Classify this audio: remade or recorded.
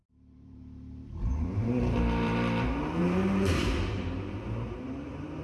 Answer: remade